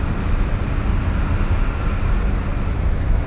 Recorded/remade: recorded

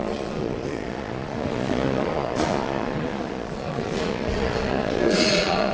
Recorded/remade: remade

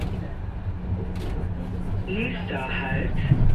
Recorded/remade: recorded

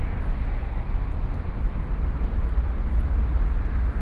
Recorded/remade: recorded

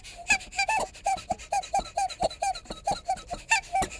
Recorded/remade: recorded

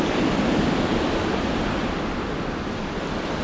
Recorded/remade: remade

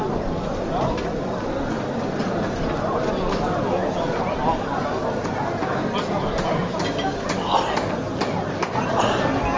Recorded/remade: recorded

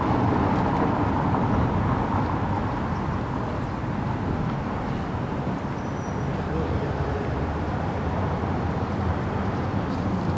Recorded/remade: recorded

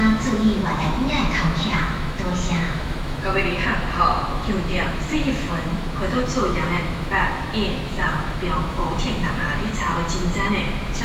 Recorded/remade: remade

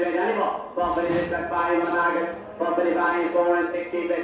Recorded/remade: recorded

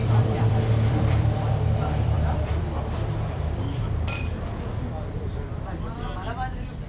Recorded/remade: remade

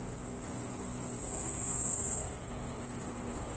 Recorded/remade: remade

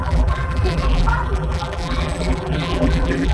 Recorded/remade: remade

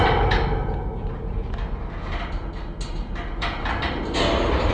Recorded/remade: recorded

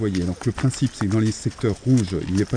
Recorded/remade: recorded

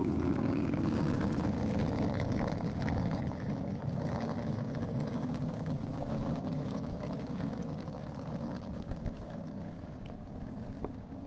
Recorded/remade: remade